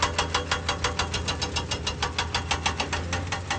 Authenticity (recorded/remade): recorded